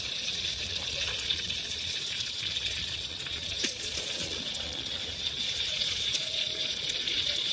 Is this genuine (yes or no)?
no